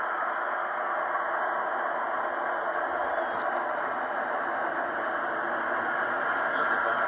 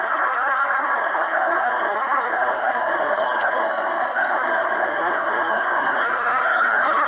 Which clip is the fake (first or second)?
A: second